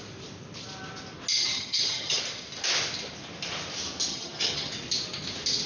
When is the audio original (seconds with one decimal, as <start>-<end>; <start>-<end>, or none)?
0.0-1.3; 2.2-4.1; 4.7-5.7